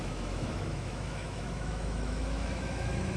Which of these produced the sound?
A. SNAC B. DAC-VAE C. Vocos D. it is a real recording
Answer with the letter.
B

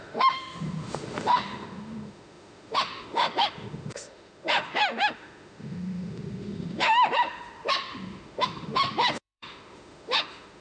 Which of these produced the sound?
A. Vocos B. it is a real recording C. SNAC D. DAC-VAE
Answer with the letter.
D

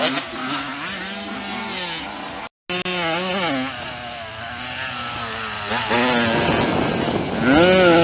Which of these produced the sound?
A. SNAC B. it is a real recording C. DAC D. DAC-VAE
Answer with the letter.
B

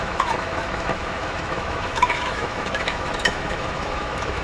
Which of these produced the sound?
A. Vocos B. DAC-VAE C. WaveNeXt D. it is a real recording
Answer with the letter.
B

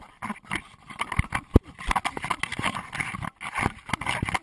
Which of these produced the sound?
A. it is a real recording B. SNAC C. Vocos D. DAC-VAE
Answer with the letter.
A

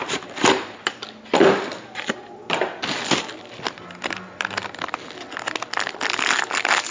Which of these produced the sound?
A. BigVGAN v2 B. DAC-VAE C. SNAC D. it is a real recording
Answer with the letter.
D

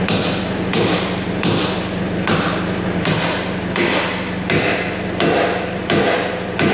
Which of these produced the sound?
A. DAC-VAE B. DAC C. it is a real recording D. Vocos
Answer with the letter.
C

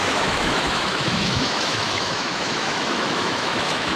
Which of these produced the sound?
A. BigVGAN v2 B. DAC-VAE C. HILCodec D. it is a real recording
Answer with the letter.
B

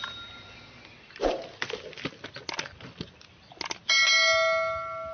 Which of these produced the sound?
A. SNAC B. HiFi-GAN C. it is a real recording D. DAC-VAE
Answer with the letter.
C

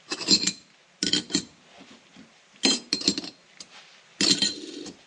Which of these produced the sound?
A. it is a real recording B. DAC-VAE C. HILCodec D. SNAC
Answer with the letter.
A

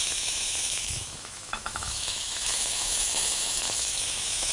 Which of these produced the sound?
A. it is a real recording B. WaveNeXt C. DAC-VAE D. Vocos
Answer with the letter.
C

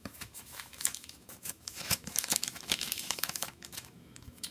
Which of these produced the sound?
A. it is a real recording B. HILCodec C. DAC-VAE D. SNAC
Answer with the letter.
C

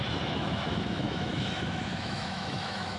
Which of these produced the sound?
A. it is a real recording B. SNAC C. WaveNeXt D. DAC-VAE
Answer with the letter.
D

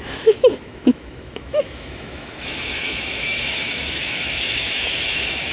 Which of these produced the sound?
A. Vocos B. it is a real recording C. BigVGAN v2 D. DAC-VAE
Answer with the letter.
D